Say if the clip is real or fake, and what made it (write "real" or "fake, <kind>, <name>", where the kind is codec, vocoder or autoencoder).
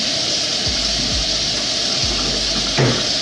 real